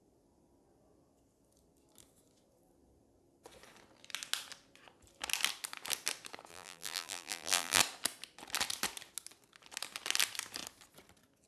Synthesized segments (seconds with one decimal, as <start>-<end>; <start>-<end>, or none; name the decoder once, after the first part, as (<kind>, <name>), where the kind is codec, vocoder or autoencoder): 6.5-7.8 (vocoder, BigVGAN v2)